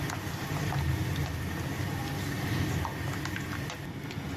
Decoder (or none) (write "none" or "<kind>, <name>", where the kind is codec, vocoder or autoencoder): none